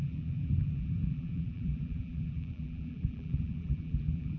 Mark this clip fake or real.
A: fake